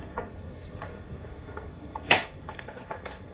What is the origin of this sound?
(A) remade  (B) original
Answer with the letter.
A